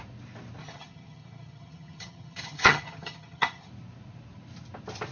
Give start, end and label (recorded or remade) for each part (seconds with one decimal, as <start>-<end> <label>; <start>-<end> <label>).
0.0-0.6 recorded; 0.6-3.7 remade; 3.7-5.1 recorded